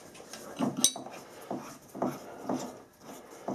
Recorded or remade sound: recorded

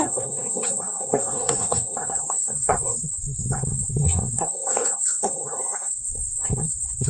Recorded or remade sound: remade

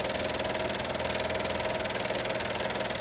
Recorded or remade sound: recorded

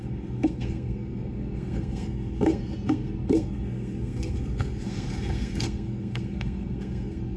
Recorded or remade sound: remade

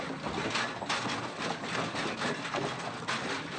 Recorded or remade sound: recorded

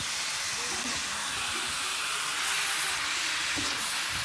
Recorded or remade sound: recorded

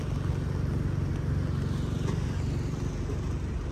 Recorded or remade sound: recorded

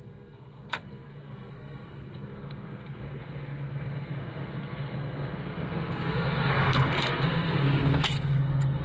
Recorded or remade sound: remade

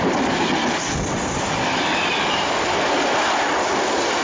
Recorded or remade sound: recorded